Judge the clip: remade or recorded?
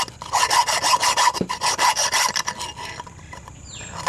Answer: recorded